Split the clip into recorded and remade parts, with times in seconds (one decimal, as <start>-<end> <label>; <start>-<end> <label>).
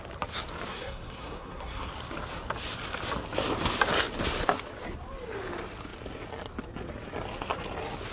0.0-0.7 recorded; 0.7-1.9 remade; 1.9-8.1 recorded